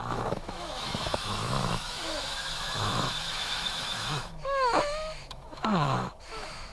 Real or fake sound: fake